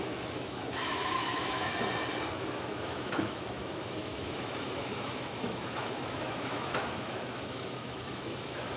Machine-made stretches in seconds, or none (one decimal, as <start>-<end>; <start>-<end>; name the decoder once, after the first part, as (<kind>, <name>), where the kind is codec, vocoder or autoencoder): 0.0-1.7 (autoencoder, DAC-VAE); 2.3-8.8